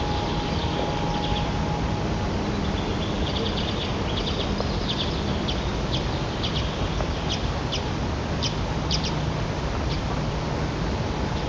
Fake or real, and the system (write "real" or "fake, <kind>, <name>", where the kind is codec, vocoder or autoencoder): real